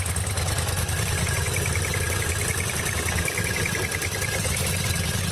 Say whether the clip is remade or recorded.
recorded